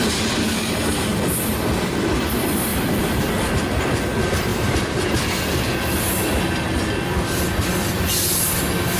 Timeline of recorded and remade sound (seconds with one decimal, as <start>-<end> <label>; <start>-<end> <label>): 0.0-2.7 recorded; 2.7-3.5 remade; 3.5-9.0 recorded